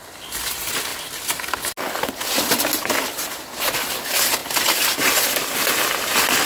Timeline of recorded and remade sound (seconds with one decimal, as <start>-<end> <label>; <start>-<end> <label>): 0.0-6.5 recorded